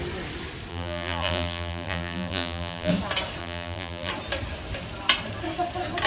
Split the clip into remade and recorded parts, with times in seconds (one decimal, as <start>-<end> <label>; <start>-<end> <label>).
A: 0.0-0.7 recorded; 0.7-2.9 remade; 2.9-3.4 recorded; 3.4-4.1 remade; 4.1-6.1 recorded